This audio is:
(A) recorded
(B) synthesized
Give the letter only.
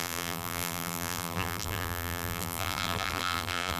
B